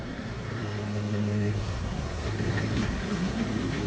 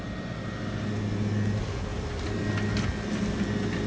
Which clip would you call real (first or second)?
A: second